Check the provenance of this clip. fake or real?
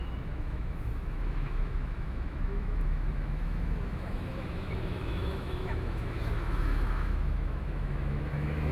fake